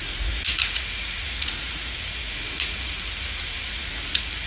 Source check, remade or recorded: remade